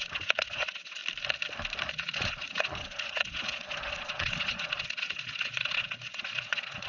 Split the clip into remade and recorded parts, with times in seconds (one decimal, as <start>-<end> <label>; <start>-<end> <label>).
0.0-1.0 remade; 1.0-1.9 recorded; 1.9-6.9 remade